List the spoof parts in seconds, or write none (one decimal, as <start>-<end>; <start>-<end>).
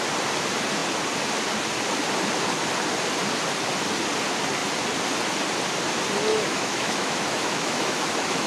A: 6.3-8.5